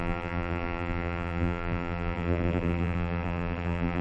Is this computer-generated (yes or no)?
yes